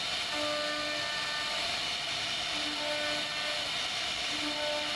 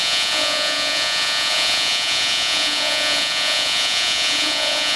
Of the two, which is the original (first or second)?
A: first